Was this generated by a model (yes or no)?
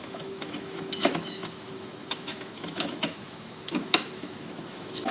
yes